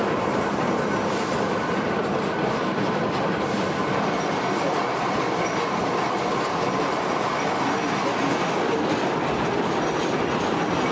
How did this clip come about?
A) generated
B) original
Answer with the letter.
B